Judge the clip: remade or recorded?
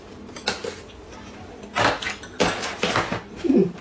recorded